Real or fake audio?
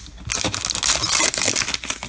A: real